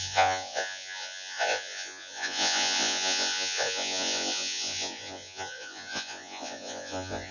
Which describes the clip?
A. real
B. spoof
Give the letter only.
B